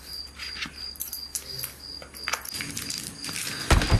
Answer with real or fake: real